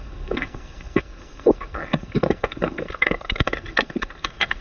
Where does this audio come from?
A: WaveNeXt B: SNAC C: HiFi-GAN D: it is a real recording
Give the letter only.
B